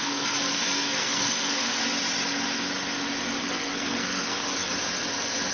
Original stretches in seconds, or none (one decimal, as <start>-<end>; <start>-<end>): 1.8-3.4; 4.7-5.5